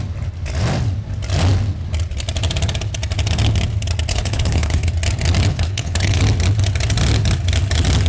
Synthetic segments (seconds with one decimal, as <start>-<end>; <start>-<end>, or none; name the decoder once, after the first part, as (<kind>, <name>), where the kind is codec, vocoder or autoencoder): 4.1-4.9 (codec, HILCodec); 5.5-6.2